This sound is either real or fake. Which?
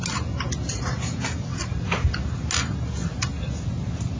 real